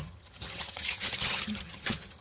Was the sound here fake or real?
fake